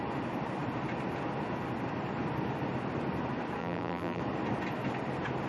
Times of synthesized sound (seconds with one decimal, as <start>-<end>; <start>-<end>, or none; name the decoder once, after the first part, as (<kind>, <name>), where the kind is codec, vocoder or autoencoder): 3.6-4.2 (vocoder, BigVGAN v2)